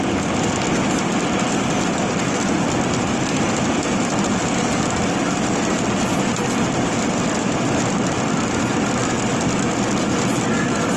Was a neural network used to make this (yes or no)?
no